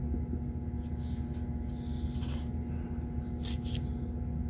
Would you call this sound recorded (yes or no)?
yes